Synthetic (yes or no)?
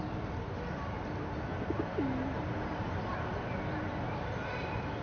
no